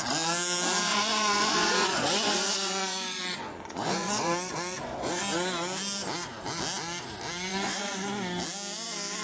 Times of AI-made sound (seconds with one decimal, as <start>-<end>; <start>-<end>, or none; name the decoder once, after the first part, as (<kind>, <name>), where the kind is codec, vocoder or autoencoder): 0.9-5.2 (vocoder, Vocos); 7.5-8.1